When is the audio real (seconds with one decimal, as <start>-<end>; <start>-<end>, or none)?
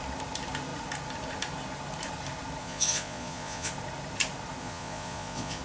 0.0-2.6; 3.7-4.6